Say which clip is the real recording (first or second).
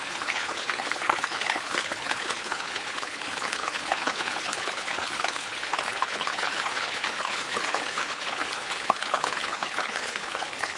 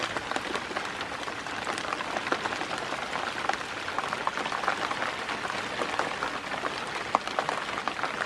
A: second